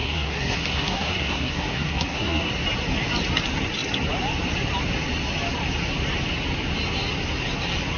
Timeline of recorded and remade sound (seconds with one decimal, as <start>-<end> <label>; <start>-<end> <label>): 0.0-2.5 remade; 2.5-8.0 recorded

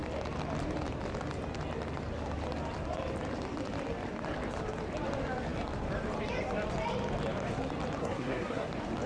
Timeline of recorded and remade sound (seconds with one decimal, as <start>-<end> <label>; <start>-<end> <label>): 0.0-8.0 recorded; 8.0-8.7 remade; 8.7-9.1 recorded

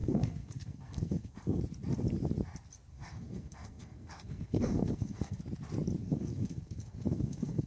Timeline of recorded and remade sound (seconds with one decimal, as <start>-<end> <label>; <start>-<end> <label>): 0.0-1.6 remade; 1.6-2.9 recorded; 2.9-5.4 remade; 5.4-6.0 recorded; 6.0-7.7 remade

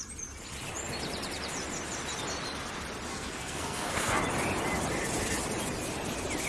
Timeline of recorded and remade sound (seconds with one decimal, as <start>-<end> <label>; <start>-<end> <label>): 0.0-3.1 recorded; 3.1-4.2 remade; 4.2-6.5 recorded

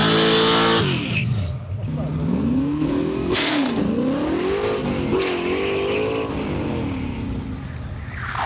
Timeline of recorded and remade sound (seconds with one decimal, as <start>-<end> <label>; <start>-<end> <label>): 0.0-2.3 recorded; 2.3-3.8 remade; 3.8-8.5 recorded

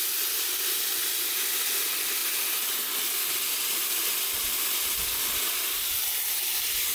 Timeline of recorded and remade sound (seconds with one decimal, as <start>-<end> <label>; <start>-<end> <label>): 0.0-6.9 recorded

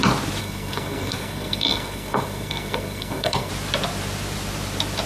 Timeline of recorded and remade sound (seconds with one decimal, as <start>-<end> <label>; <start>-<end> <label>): 0.0-0.4 recorded; 0.4-3.5 remade; 3.5-5.1 recorded

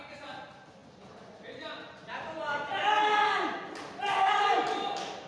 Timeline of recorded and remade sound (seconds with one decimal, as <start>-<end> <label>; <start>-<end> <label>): 0.0-5.3 recorded